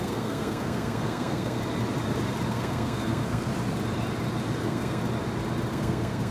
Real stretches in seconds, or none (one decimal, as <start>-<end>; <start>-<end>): 1.6-2.5; 3.5-4.6; 5.0-5.7